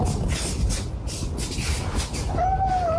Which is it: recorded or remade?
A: recorded